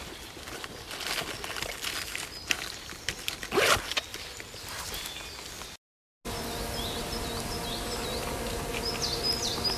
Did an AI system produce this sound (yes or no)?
no